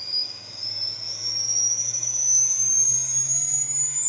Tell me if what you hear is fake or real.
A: fake